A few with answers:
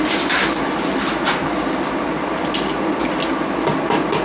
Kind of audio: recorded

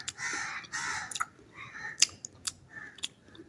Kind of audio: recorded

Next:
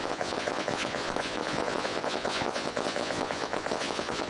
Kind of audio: remade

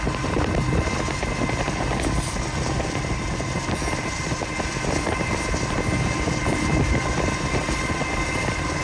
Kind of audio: recorded